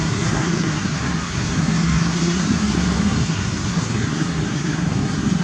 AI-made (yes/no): yes